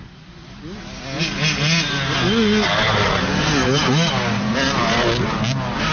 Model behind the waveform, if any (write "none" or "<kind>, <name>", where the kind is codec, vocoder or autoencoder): none